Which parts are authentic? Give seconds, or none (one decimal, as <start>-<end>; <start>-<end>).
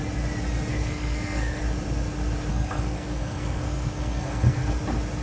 0.0-0.7; 1.6-2.5; 4.8-5.2